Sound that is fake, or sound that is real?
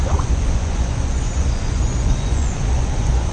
fake